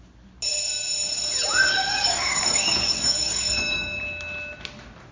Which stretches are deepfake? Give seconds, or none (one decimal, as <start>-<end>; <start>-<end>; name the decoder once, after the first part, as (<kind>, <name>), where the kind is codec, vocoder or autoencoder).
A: 1.7-4.0 (codec, DAC)